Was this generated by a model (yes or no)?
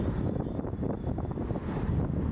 no